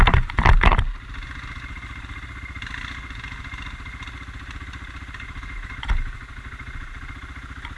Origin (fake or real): real